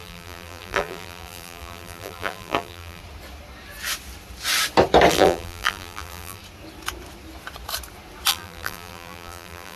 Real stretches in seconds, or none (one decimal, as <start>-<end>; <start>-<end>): 3.0-5.1; 6.4-8.3